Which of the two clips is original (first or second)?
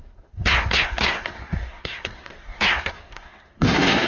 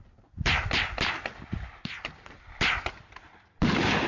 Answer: second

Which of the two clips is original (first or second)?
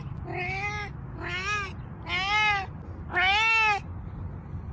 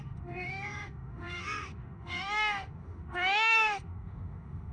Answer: first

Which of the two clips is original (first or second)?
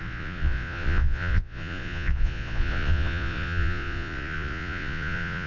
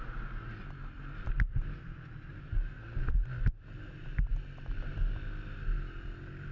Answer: second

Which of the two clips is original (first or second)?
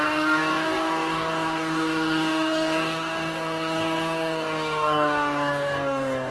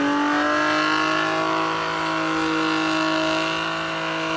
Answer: second